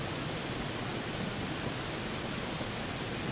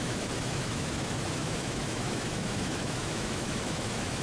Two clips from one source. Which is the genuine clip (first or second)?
first